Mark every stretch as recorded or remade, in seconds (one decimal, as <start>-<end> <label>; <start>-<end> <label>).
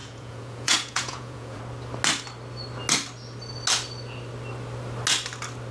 0.0-1.6 remade; 1.6-5.7 recorded